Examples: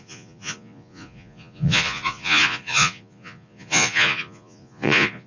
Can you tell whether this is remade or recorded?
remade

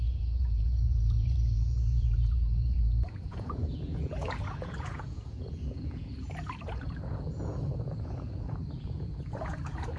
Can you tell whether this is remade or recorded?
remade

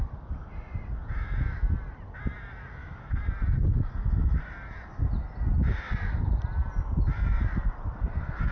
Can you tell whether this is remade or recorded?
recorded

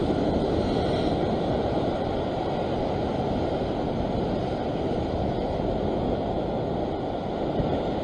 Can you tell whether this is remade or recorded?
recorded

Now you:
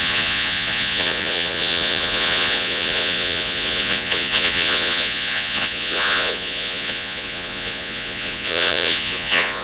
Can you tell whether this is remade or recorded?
remade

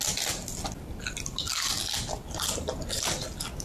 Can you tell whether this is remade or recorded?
recorded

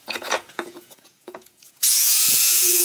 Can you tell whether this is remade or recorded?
remade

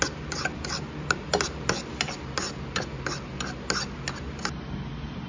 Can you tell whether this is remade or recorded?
recorded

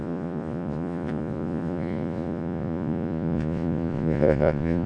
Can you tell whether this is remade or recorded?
remade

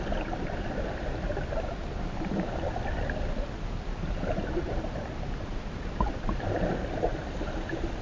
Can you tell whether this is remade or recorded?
recorded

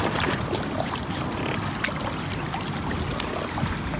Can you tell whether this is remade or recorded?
recorded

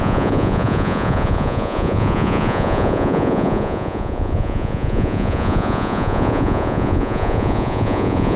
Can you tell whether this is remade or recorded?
remade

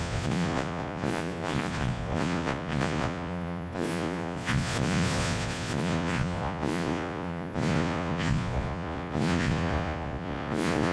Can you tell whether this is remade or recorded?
remade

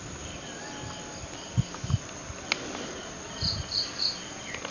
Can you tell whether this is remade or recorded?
recorded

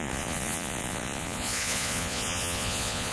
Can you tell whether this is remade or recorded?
remade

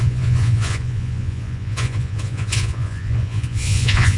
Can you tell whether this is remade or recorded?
remade